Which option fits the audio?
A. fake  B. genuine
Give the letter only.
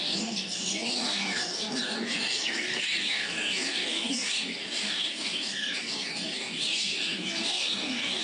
A